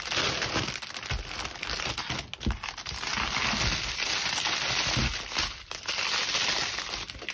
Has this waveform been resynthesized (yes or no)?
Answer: no